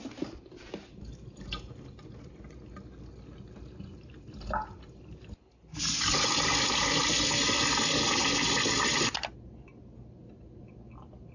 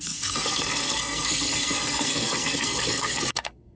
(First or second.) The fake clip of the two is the second